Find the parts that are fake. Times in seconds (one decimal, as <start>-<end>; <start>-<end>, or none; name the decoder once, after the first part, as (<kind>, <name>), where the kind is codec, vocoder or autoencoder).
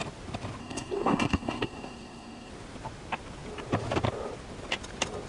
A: 0.6-2.5 (codec, SNAC)